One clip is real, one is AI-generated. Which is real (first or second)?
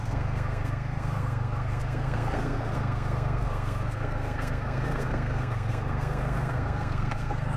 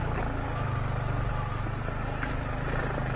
second